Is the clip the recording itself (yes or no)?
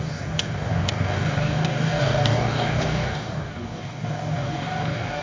no